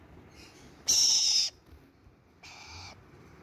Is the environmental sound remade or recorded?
recorded